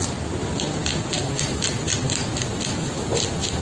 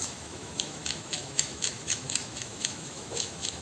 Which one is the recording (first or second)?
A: first